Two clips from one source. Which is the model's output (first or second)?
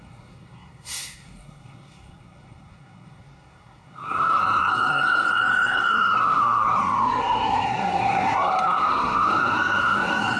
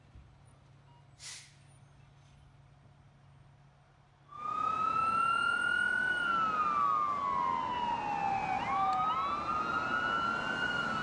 first